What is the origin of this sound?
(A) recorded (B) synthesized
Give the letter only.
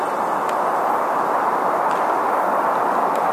A